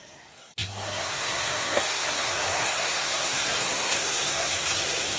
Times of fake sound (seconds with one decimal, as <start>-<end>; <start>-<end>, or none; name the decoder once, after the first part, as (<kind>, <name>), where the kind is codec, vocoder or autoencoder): 0.0-5.2 (codec, SNAC)